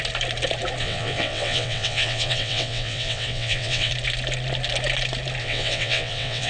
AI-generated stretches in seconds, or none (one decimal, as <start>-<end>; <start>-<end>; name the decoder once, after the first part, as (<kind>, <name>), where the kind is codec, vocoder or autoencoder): 0.8-3.9 (vocoder, WaveNeXt); 5.4-6.5